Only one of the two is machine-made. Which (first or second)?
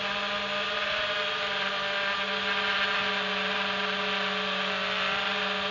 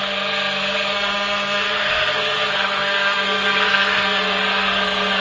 second